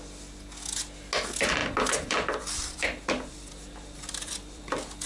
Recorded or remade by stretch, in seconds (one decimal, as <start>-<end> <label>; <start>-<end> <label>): 0.0-1.6 recorded; 1.6-5.1 remade

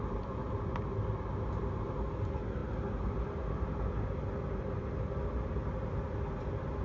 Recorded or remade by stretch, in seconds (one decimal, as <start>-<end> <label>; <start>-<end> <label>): 0.0-6.8 recorded

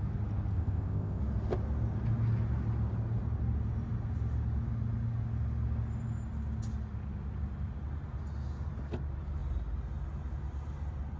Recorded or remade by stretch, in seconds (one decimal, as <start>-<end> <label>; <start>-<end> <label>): 0.0-0.5 recorded; 0.5-1.2 remade; 1.2-11.2 recorded

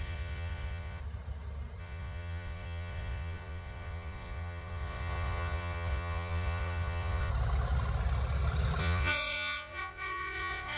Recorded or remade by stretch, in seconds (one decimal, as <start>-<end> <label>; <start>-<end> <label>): 0.0-1.0 remade; 1.0-1.8 recorded; 1.8-7.3 remade; 7.3-8.8 recorded; 8.8-10.8 remade

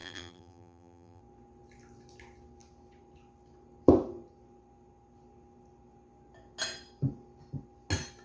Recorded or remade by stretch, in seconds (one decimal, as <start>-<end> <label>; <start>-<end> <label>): 0.0-1.2 remade; 1.2-8.2 recorded